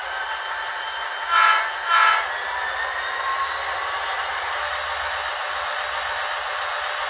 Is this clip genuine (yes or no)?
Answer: yes